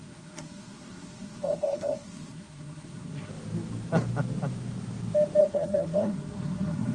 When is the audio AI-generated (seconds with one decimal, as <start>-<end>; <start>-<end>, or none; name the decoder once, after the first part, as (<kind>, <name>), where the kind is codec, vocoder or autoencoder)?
0.0-3.3 (codec, SNAC); 5.4-6.9